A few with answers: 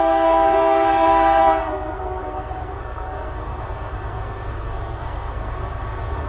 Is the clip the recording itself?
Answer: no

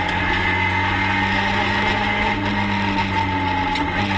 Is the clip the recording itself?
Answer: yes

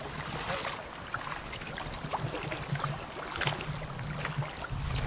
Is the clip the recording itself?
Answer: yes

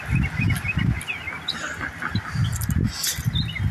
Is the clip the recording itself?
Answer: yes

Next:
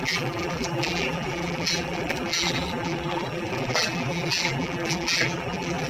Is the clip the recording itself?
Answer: no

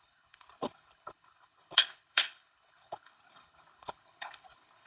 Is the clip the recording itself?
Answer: no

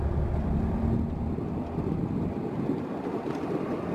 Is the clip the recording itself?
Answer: yes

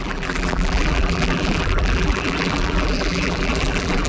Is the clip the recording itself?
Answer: no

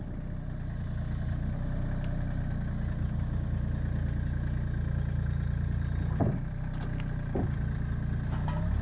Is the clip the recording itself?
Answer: yes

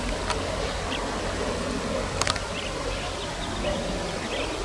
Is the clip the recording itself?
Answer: yes